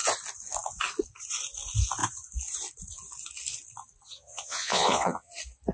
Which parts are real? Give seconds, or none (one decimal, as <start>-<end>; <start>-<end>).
0.0-4.1; 5.3-5.7

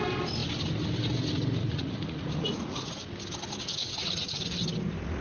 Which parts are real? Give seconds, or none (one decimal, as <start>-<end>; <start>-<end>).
0.0-1.6; 2.9-3.8; 4.4-5.2

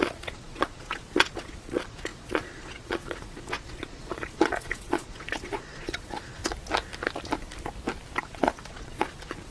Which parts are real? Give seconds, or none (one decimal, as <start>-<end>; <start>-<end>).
6.4-8.2

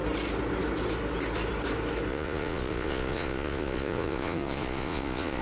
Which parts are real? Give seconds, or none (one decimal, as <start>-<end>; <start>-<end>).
0.0-2.1